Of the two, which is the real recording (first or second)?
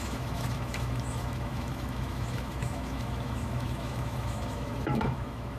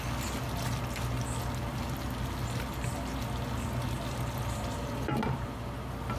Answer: second